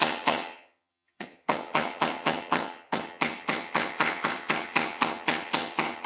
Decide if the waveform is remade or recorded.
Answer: remade